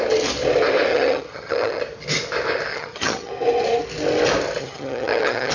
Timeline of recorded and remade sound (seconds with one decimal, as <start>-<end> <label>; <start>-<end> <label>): 0.0-0.9 recorded; 0.9-1.8 remade; 1.8-2.7 recorded; 2.7-3.3 remade; 3.3-4.6 recorded; 4.6-5.5 remade